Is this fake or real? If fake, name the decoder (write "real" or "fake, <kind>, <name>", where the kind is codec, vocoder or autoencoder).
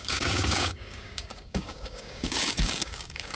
fake, codec, DAC